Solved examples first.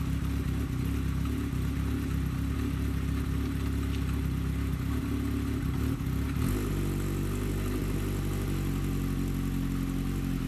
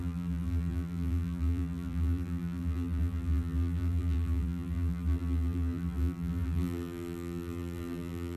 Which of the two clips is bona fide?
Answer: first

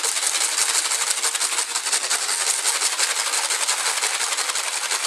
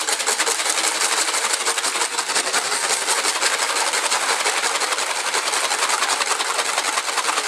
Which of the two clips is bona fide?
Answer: first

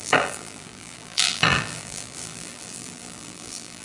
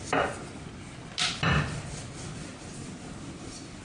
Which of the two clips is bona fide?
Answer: second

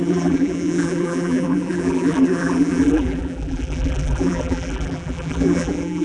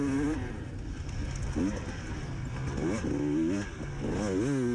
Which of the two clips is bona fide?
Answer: second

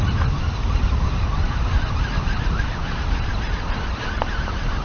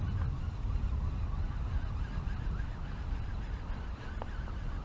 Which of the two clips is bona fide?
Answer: second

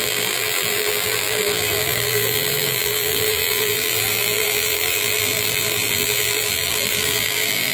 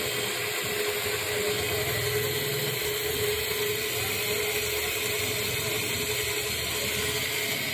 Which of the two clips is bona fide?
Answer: second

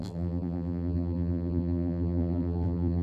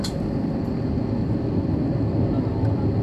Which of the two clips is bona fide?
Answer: second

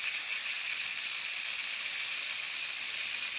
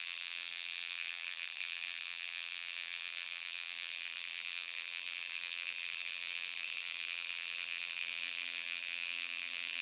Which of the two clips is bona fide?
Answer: first